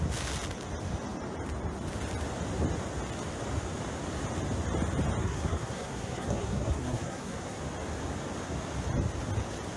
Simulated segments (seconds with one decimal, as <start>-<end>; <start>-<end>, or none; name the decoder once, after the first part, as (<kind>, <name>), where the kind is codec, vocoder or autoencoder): 5.2-7.6 (codec, SNAC)